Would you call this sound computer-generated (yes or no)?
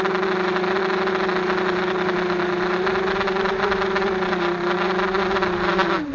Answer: no